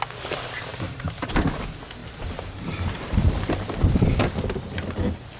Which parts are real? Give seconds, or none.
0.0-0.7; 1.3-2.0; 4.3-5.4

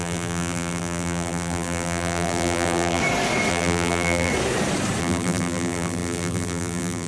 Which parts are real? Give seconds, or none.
3.0-3.5; 4.3-5.0

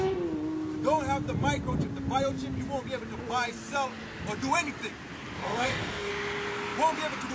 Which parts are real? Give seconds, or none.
0.0-5.4; 6.1-7.3

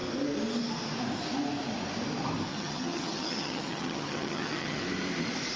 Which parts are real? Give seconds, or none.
0.0-2.5; 4.8-5.6

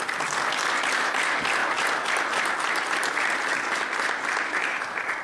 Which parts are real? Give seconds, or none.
0.0-5.2

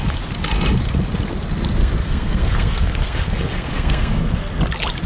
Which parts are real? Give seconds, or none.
0.0-1.8; 4.6-5.1

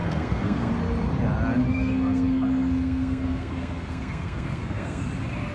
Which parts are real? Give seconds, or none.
0.7-1.7; 5.0-5.5

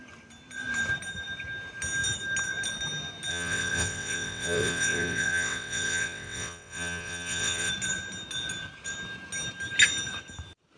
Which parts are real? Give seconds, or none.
0.0-3.3; 7.7-10.8